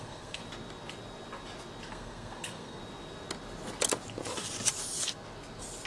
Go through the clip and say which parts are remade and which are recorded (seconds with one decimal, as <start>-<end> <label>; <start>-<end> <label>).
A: 0.0-0.4 remade; 0.4-1.9 recorded; 1.9-2.8 remade; 2.8-5.9 recorded